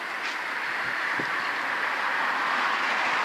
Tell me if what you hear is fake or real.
fake